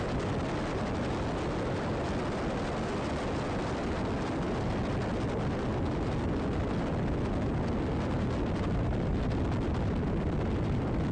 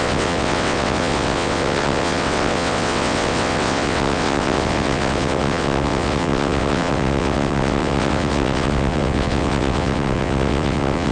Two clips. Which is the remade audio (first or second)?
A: second